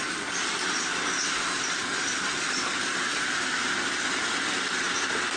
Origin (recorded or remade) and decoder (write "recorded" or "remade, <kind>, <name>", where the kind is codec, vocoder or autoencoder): recorded